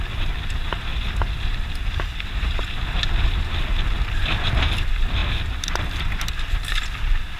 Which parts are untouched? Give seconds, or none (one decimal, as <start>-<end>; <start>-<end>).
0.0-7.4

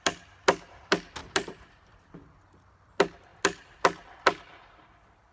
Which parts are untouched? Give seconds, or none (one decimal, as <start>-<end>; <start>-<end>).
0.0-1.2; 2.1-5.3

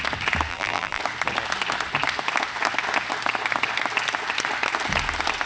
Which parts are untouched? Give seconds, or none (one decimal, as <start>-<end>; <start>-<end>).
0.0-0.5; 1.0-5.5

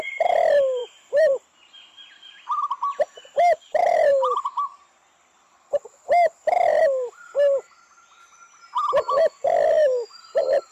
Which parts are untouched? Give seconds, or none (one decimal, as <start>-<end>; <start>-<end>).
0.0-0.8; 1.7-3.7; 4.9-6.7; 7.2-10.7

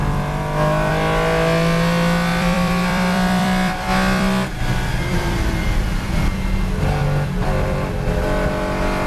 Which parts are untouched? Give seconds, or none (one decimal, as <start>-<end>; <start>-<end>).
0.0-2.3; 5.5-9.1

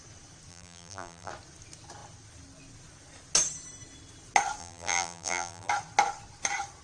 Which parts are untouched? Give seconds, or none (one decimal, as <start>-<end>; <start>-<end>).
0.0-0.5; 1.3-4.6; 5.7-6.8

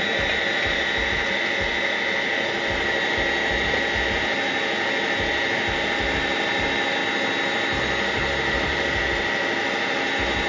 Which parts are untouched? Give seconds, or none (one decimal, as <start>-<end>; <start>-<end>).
0.0-10.5